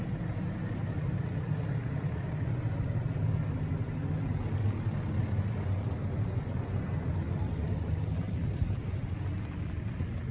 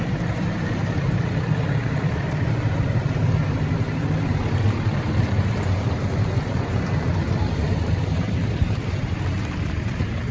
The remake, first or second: second